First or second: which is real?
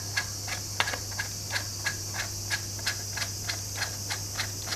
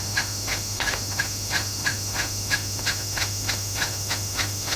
first